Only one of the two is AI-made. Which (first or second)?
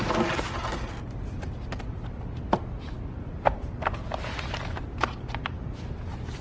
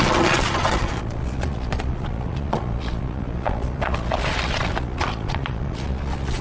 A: second